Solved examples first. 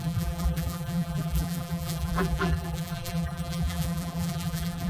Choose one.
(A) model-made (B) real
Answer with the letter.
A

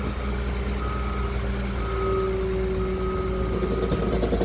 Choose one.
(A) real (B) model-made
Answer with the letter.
A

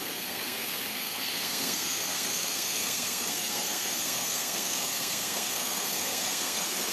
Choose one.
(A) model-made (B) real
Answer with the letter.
A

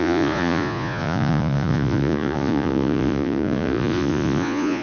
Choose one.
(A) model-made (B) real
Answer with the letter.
A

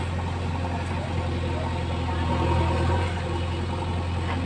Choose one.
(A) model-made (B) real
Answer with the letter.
B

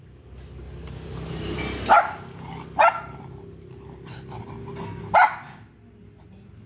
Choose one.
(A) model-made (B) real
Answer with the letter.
B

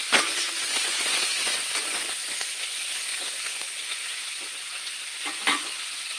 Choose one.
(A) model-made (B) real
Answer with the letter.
A